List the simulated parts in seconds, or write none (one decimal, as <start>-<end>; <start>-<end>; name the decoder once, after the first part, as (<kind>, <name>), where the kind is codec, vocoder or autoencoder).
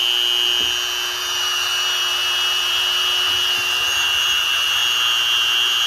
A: 1.2-4.8 (vocoder, BigVGAN v2)